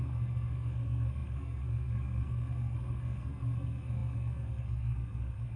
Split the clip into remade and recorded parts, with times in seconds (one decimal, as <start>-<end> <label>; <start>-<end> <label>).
0.0-5.6 remade